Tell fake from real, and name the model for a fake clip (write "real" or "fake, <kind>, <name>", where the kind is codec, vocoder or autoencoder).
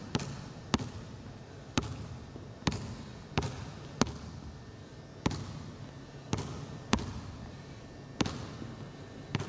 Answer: real